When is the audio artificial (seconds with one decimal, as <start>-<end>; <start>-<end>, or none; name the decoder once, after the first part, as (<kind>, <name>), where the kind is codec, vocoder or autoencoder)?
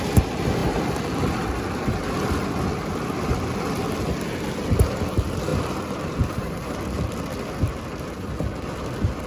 none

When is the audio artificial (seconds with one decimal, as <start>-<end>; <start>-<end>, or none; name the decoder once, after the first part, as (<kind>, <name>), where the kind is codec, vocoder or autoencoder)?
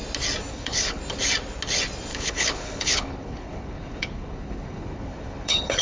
0.5-1.0 (codec, HILCodec); 2.1-5.8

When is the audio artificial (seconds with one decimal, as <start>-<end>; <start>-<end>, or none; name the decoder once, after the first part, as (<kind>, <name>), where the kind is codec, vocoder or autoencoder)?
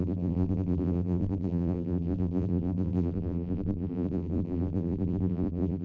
0.0-5.8 (vocoder, BigVGAN v2)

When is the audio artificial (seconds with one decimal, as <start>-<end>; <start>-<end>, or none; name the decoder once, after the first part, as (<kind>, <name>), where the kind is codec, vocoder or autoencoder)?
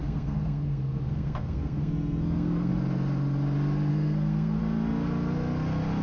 0.0-2.7 (codec, SNAC); 3.9-4.6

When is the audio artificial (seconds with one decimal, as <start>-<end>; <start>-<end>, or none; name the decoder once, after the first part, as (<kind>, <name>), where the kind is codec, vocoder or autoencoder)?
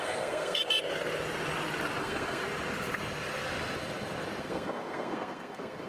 0.0-0.6 (codec, SNAC); 2.0-2.4; 4.4-5.9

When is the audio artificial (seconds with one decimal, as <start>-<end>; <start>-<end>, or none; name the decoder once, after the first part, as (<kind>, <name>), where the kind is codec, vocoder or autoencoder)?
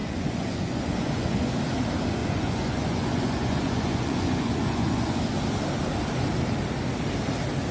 0.0-1.6 (vocoder, Vocos); 2.2-5.2